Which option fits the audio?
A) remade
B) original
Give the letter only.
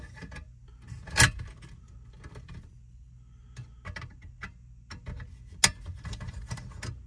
B